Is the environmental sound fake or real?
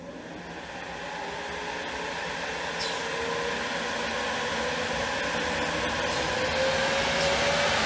real